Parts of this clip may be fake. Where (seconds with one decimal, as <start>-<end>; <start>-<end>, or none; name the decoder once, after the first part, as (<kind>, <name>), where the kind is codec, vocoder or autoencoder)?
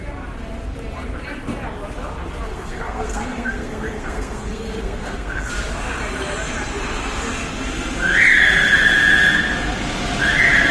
2.5-5.5 (codec, SNAC)